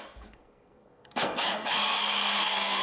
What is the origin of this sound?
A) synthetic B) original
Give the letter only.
A